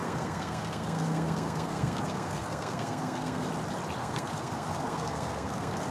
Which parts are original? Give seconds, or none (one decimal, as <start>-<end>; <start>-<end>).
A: 3.5-4.0